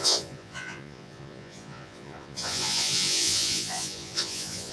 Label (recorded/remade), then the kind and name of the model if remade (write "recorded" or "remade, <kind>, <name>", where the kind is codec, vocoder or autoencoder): remade, vocoder, Vocos